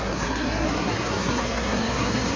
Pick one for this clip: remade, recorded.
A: remade